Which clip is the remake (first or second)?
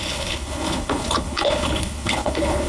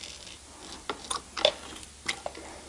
first